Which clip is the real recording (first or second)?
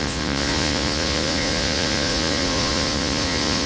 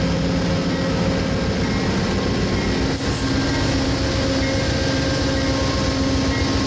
second